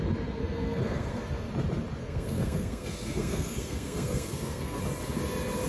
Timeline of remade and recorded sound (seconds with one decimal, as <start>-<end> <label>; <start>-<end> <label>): 0.0-0.4 recorded; 0.4-1.5 remade; 1.5-2.0 recorded; 2.0-4.8 remade; 4.8-5.7 recorded

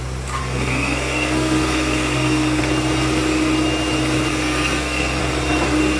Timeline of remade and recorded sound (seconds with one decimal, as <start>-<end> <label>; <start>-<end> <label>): 0.0-0.4 recorded; 0.4-2.6 remade; 2.6-4.3 recorded; 4.3-5.2 remade; 5.2-6.0 recorded